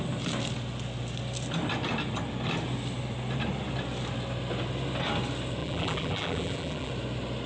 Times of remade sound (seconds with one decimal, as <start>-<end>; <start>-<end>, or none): 5.6-6.9